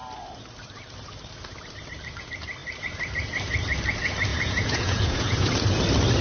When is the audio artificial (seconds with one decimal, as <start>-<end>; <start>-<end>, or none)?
4.3-5.5